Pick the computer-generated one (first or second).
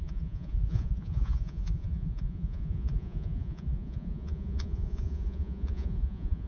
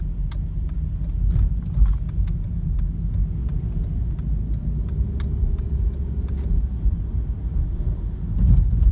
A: first